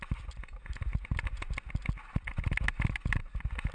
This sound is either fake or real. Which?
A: real